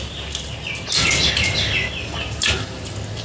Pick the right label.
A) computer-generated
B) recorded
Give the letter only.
B